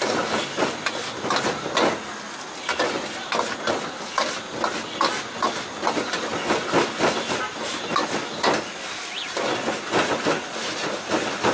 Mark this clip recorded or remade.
recorded